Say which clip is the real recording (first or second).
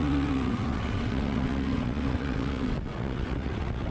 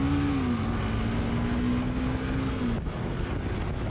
second